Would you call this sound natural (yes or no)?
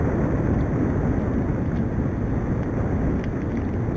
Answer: yes